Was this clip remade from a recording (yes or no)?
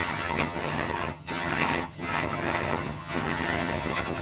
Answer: yes